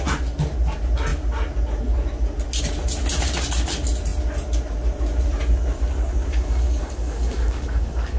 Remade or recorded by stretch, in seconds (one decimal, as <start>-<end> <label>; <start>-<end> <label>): 0.0-6.3 recorded; 6.3-8.2 remade